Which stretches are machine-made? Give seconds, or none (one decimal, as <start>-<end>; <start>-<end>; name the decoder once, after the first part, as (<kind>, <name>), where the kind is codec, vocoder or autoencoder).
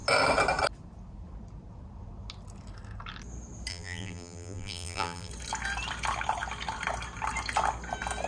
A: 3.7-5.3 (vocoder, BigVGAN v2)